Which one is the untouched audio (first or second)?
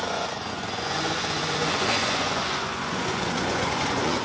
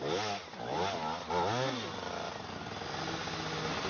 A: second